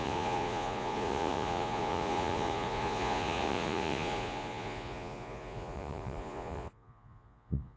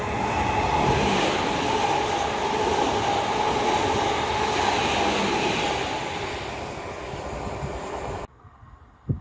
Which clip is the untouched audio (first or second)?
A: second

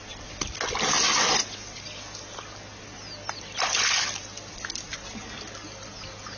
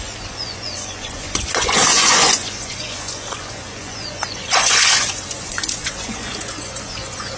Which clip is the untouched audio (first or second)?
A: first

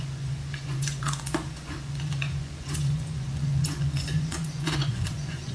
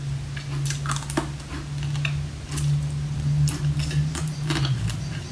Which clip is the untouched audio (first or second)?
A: second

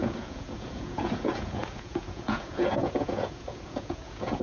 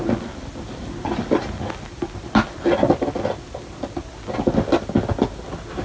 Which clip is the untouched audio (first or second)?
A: second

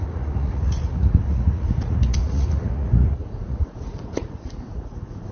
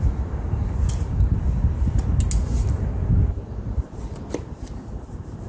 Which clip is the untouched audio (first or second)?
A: second